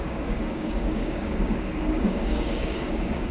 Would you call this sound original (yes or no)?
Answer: no